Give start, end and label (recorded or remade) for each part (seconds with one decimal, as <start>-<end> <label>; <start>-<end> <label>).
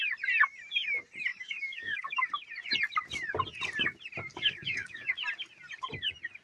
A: 0.0-1.3 recorded; 1.3-2.3 remade; 2.3-4.3 recorded; 4.3-5.1 remade; 5.1-6.4 recorded